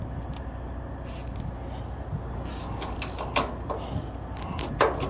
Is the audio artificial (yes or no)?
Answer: no